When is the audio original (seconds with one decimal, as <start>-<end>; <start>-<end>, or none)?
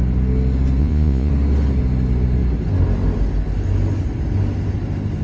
0.0-0.8; 1.3-5.2